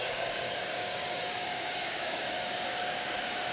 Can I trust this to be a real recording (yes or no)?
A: no